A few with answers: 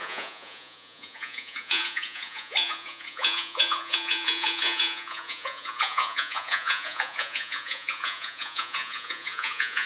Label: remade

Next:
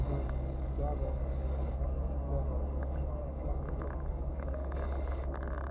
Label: remade